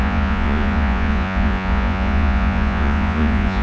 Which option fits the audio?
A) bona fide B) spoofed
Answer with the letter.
B